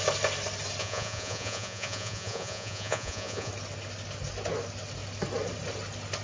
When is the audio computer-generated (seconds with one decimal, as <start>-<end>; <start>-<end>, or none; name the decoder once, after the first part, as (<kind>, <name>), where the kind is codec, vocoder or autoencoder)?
0.8-3.5 (vocoder, Vocos)